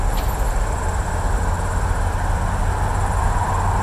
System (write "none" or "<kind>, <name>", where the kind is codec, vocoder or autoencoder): none